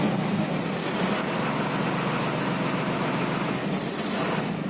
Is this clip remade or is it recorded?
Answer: recorded